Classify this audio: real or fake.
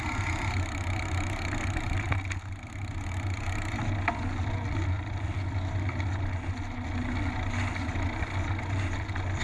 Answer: real